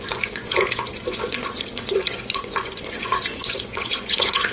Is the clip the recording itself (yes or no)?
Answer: no